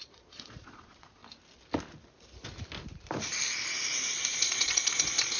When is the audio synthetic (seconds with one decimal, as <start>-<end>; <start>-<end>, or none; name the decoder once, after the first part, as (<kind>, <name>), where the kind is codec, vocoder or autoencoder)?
0.0-1.2 (vocoder, Vocos); 4.3-5.4